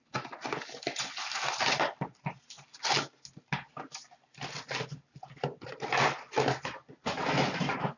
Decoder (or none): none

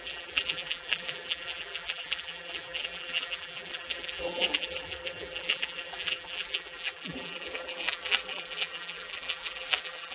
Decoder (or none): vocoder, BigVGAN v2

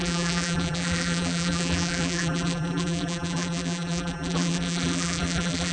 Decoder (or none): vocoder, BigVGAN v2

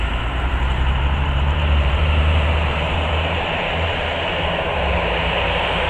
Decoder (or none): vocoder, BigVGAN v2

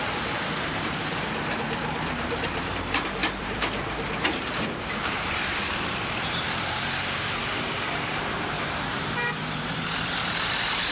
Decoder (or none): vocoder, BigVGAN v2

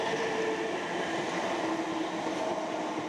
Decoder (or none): none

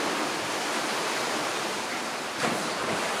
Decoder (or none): vocoder, BigVGAN v2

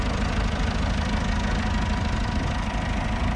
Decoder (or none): none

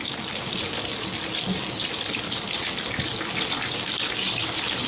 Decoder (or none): none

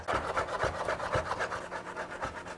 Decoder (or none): none